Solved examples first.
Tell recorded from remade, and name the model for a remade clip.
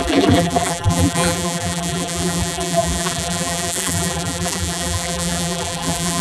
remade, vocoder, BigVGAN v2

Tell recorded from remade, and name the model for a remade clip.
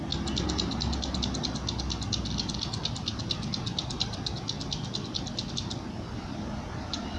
recorded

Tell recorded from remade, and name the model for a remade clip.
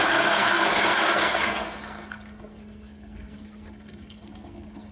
remade, codec, SNAC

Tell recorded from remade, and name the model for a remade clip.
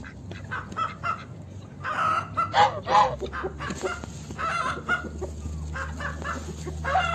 recorded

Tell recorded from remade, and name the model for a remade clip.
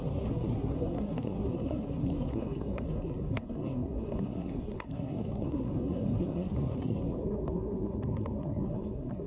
remade, codec, SNAC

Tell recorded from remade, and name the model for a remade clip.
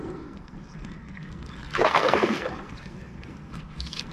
remade, codec, SNAC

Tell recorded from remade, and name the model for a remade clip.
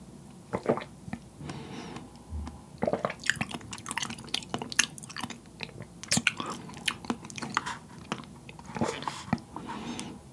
recorded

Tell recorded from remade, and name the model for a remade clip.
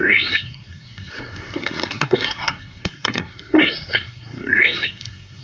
remade, codec, SNAC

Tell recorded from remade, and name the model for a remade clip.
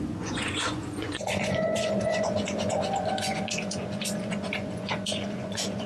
remade, vocoder, Vocos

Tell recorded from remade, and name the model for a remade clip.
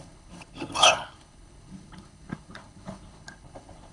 remade, codec, HILCodec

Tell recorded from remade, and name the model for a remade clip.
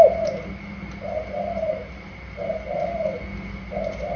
recorded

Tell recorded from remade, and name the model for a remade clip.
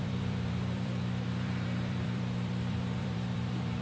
remade, vocoder, BigVGAN v2